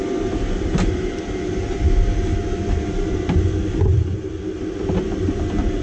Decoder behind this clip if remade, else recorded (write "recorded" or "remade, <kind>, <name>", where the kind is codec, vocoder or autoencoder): recorded